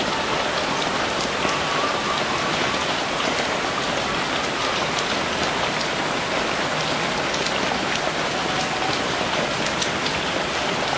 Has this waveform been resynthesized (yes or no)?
no